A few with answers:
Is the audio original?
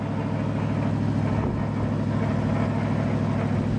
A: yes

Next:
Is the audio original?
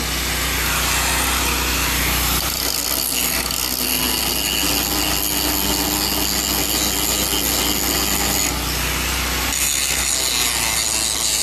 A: yes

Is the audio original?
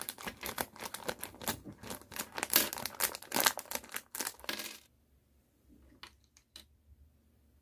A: yes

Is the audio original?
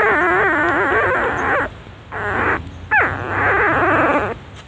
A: yes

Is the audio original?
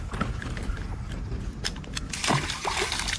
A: yes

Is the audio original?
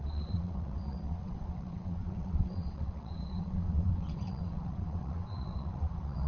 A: no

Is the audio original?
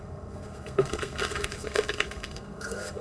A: no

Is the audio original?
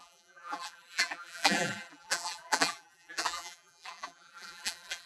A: no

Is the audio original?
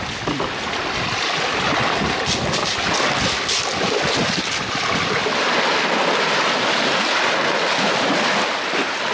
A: yes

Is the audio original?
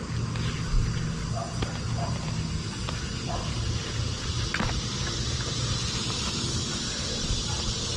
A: yes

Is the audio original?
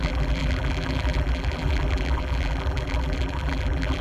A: no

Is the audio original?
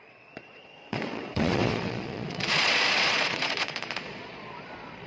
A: no